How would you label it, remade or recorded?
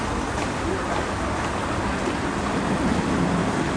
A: recorded